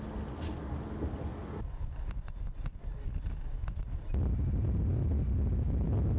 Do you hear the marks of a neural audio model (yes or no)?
no